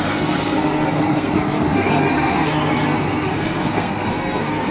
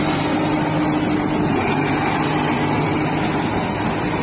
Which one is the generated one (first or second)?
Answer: first